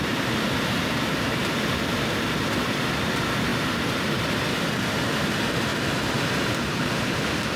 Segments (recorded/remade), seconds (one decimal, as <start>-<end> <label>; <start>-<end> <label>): 0.0-5.7 remade; 5.7-6.2 recorded; 6.2-7.6 remade